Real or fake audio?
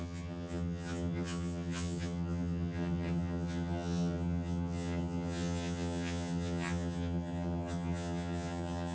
fake